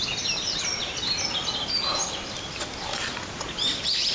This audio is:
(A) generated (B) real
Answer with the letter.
B